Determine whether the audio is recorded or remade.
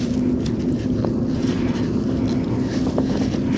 recorded